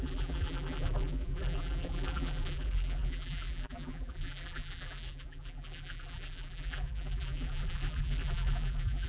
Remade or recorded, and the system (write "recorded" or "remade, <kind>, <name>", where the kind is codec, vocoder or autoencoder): remade, vocoder, BigVGAN v2